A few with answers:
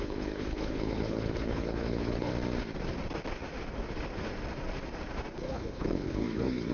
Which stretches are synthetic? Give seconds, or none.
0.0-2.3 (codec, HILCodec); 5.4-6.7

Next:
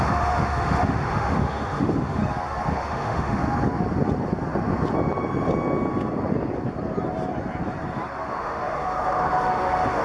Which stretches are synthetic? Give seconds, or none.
0.0-2.2 (autoencoder, DAC-VAE); 2.7-3.4; 8.3-10.0

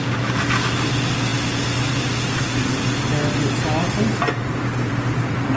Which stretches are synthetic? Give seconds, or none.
none

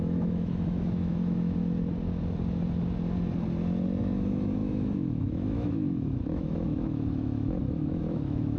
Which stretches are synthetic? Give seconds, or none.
0.0-1.6 (autoencoder, DAC-VAE); 4.0-8.6

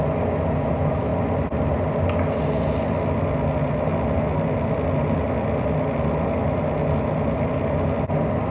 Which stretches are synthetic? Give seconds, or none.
none

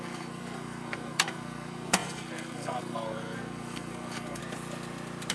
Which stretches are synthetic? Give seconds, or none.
0.0-4.4 (codec, SNAC)